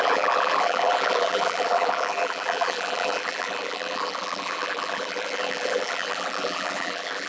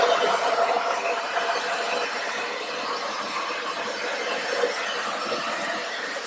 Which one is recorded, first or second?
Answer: second